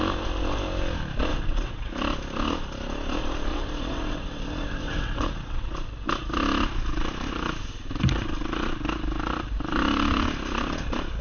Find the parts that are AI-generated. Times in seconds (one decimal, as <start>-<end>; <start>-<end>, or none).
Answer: 1.3-1.9; 3.5-5.7